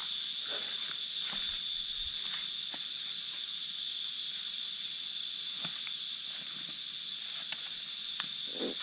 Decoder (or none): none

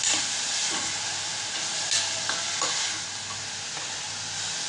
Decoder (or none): none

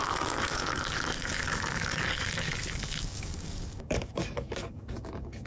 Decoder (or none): codec, DAC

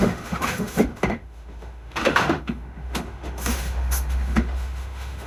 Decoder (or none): autoencoder, DAC-VAE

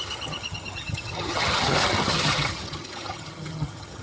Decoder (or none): vocoder, HiFi-GAN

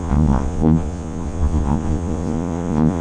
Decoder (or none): vocoder, Vocos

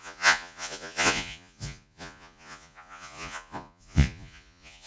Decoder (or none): vocoder, Vocos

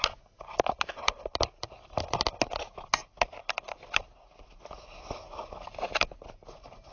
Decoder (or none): none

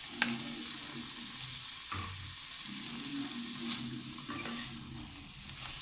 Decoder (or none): none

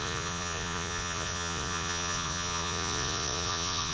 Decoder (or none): vocoder, Vocos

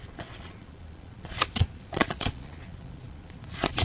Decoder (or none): vocoder, Vocos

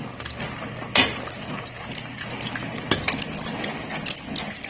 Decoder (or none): none